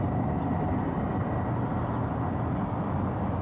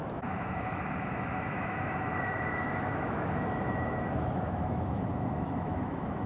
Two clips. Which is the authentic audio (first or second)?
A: first